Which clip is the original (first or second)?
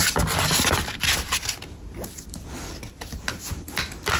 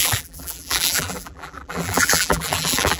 first